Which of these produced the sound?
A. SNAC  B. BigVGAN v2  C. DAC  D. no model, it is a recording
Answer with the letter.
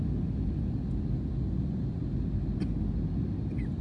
D